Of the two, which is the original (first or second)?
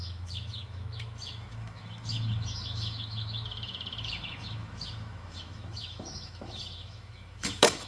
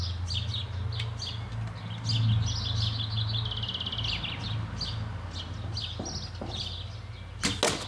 second